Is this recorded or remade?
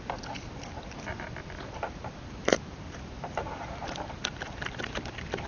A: remade